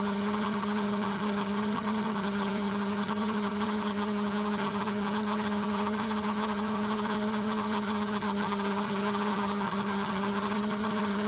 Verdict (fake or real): fake